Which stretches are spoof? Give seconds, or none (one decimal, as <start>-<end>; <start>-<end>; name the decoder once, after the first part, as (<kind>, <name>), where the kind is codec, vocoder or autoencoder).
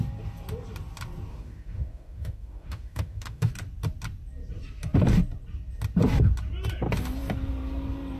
1.3-3.5 (autoencoder, DAC-VAE)